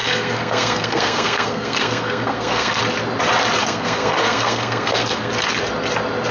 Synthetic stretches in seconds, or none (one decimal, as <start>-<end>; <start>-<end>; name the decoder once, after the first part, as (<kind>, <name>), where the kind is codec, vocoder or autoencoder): 0.0-2.8 (codec, SNAC); 3.6-5.3